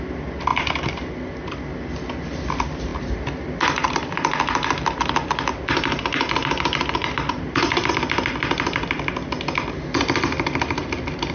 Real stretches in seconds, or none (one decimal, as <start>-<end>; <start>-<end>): 0.0-11.3